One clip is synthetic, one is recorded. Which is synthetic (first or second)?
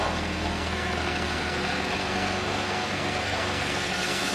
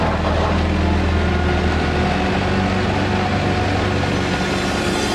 first